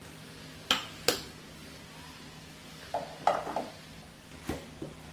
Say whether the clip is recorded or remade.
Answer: recorded